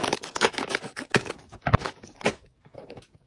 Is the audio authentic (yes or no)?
no